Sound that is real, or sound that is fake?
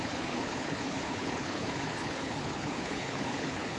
fake